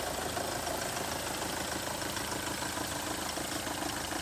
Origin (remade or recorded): recorded